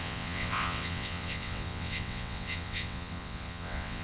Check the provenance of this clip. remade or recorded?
remade